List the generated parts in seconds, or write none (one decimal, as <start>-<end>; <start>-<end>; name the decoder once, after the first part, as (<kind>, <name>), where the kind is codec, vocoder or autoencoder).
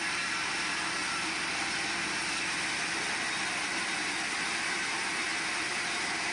none